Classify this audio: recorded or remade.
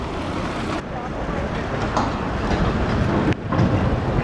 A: recorded